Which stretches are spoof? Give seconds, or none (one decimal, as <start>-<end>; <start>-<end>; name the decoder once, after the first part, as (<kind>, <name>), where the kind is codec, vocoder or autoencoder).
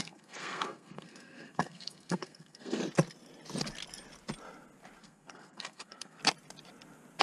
0.0-2.8 (codec, SNAC); 5.0-6.2